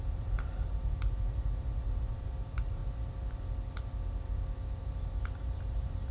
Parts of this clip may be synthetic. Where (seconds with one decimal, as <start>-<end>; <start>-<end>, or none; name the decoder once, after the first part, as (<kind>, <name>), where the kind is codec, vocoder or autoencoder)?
0.0-2.8 (vocoder, BigVGAN v2); 5.4-6.1

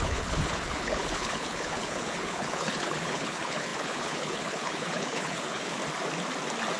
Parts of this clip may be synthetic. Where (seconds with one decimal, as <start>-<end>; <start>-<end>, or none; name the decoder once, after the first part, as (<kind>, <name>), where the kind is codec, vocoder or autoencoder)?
0.0-5.8 (codec, HILCodec)

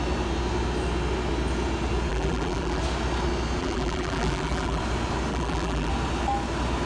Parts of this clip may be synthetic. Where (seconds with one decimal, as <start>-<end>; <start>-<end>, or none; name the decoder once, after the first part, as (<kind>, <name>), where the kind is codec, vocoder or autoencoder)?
2.1-2.8 (vocoder, BigVGAN v2); 3.6-4.8; 5.3-5.9

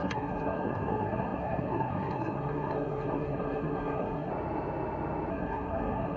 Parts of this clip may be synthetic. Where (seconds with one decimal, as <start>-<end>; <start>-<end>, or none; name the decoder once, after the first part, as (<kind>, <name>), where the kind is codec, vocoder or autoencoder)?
0.0-4.3 (codec, SNAC); 5.3-6.2

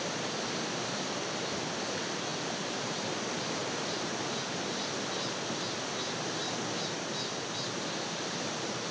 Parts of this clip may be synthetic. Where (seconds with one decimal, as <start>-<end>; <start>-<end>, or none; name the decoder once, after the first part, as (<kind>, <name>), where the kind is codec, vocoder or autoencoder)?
none

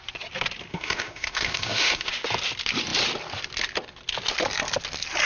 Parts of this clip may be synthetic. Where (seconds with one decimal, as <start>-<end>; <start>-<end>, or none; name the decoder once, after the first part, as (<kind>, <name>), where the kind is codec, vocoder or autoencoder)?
0.7-2.1 (autoencoder, DAC-VAE)